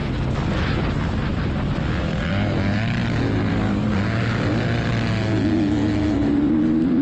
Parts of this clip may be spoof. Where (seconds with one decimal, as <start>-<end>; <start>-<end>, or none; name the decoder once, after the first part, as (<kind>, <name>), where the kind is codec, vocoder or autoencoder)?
6.2-7.0 (vocoder, BigVGAN v2)